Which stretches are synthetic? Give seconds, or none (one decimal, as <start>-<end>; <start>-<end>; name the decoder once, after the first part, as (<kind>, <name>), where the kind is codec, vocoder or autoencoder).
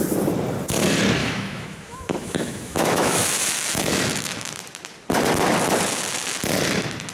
1.2-4.5 (autoencoder, DAC-VAE)